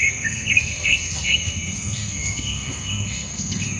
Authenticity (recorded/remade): remade